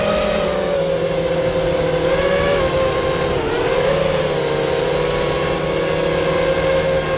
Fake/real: real